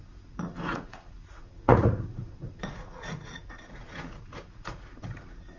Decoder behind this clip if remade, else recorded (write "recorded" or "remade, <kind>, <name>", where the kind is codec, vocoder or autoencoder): remade, vocoder, Vocos